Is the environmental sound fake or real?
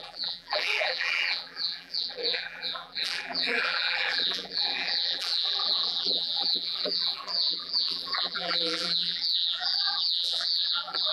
fake